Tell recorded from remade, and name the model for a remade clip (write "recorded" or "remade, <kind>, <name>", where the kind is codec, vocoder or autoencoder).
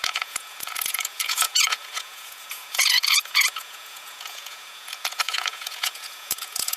remade, vocoder, Vocos